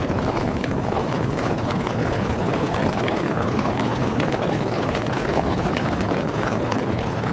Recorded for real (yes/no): no